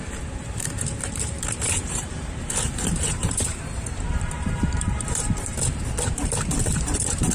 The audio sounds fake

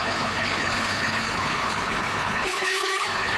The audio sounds fake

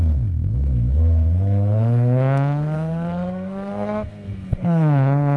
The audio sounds fake